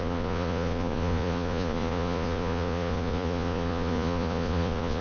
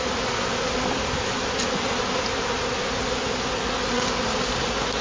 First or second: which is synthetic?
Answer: first